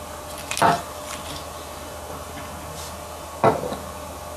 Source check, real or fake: real